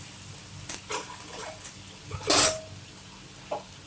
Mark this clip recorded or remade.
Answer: recorded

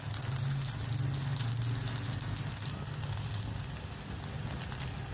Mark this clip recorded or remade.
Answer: recorded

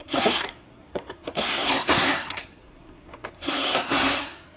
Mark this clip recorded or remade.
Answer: remade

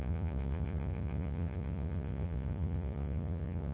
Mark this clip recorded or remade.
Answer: remade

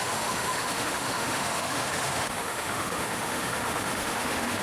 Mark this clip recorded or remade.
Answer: remade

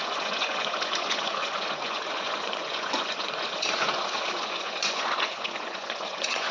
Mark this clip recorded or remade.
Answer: remade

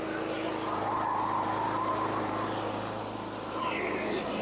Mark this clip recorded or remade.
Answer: recorded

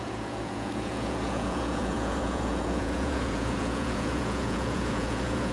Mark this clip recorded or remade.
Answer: remade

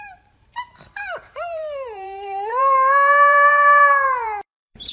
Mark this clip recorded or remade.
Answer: remade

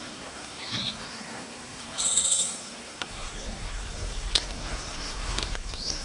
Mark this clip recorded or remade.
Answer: remade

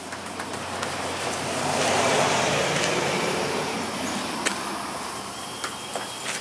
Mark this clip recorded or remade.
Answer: recorded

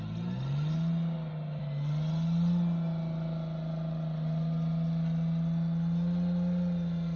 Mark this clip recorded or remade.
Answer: recorded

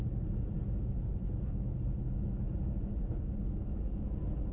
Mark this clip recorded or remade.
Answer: recorded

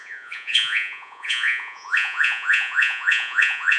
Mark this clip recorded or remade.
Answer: remade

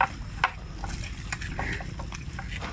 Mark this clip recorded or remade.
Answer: recorded